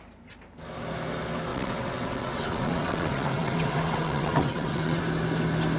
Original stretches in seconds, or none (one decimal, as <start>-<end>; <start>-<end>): 0.0-1.5; 5.0-5.8